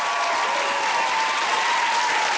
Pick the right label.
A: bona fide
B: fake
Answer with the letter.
A